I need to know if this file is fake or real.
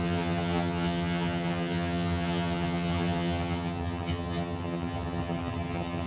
fake